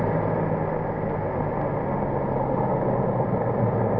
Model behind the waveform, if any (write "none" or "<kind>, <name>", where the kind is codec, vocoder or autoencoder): none